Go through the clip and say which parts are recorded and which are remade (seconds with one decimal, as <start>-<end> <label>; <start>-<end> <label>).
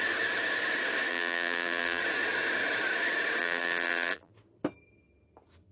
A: 0.0-1.1 recorded; 1.1-2.0 remade; 2.0-3.4 recorded; 3.4-4.3 remade; 4.3-5.7 recorded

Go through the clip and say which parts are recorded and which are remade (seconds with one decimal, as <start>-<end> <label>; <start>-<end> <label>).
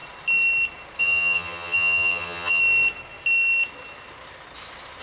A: 0.0-1.0 recorded; 1.0-2.6 remade; 2.6-5.0 recorded